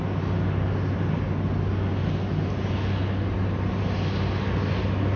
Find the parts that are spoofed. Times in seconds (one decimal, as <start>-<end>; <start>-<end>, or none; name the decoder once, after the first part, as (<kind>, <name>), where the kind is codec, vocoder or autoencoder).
none

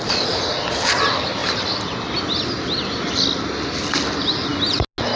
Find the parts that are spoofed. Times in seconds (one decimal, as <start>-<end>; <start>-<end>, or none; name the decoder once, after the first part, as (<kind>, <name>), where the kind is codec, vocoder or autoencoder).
none

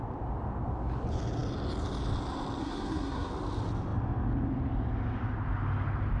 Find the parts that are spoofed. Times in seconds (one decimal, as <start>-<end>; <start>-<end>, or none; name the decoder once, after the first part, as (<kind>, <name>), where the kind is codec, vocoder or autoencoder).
2.6-3.3 (codec, SNAC)

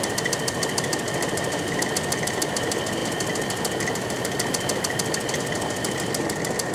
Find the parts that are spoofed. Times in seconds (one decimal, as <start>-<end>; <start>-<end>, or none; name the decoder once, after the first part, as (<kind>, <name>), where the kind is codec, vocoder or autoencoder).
none

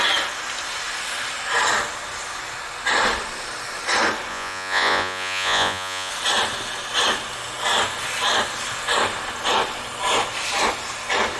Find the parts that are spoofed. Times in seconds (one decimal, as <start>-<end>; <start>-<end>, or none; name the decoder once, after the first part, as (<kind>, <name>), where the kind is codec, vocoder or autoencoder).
4.3-6.1 (vocoder, Vocos)

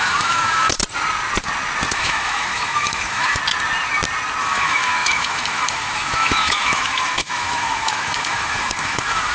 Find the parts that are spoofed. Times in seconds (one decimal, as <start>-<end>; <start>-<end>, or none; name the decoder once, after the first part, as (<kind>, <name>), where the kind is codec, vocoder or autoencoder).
0.0-0.8 (autoencoder, DAC-VAE); 1.9-3.4; 4.4-9.3